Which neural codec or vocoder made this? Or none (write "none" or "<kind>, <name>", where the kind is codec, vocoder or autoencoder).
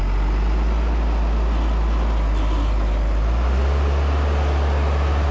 none